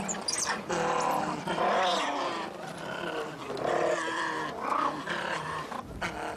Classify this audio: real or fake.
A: real